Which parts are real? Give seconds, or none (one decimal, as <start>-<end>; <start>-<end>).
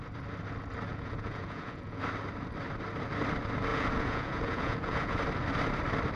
0.0-0.9; 2.0-3.7; 5.2-6.2